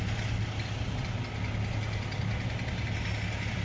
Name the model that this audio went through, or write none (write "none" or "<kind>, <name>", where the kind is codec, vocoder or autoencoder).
none